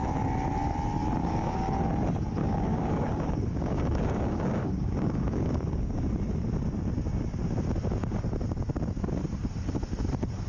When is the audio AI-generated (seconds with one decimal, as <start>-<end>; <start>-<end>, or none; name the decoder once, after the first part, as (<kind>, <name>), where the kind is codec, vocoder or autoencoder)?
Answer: 1.2-1.8 (codec, DAC); 2.4-6.0